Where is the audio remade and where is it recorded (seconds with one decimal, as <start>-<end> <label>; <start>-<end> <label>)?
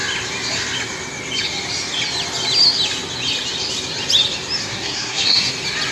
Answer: 0.0-4.6 recorded; 4.6-5.5 remade; 5.5-5.9 recorded